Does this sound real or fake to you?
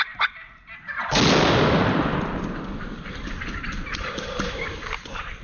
real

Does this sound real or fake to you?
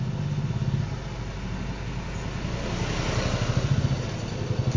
real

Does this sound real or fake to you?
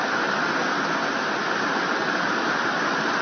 real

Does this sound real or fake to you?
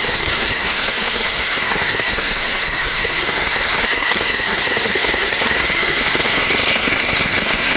fake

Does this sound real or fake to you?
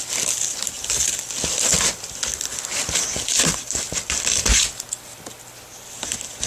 real